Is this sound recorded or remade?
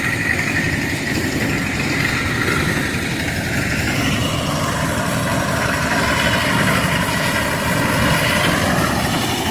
remade